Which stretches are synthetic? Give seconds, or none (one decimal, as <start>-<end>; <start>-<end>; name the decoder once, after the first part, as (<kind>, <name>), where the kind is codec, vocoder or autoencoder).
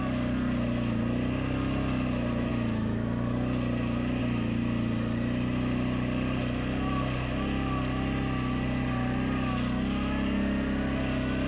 none